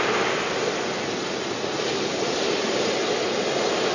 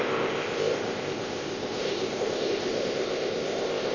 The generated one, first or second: second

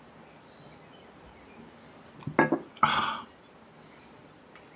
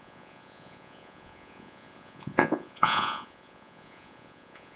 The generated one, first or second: second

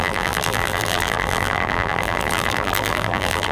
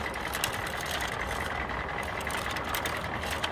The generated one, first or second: first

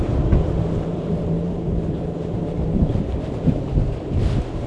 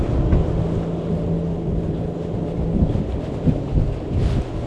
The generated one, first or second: first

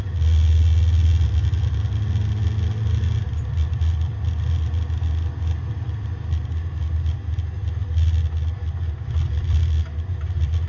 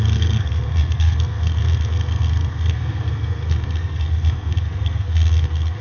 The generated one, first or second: second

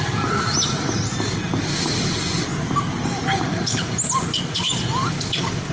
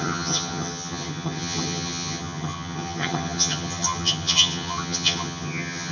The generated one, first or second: second